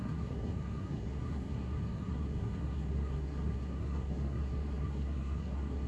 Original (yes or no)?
no